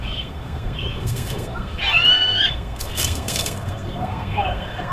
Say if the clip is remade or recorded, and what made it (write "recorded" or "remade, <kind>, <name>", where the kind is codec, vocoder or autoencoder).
remade, codec, SNAC